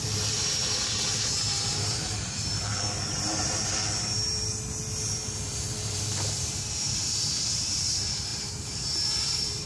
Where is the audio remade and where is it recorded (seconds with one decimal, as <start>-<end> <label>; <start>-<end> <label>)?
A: 0.0-3.8 remade; 3.8-5.5 recorded; 5.5-9.7 remade